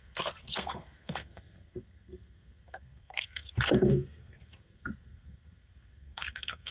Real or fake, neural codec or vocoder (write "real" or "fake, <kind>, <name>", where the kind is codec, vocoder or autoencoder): fake, codec, SNAC